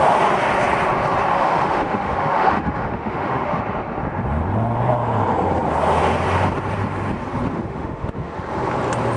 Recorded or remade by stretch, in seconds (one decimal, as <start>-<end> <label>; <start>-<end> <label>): 0.0-1.3 recorded; 1.3-3.6 remade; 3.6-7.5 recorded; 7.5-8.4 remade; 8.4-9.2 recorded